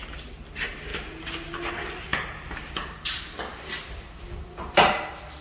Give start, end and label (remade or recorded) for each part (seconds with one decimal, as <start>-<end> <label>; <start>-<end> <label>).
0.0-5.4 recorded